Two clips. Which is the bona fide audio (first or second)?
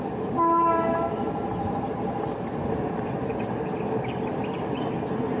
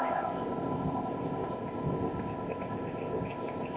first